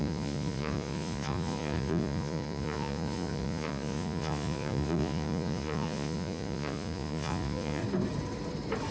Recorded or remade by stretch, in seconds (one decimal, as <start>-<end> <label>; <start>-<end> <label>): 0.0-7.8 remade; 7.8-8.9 recorded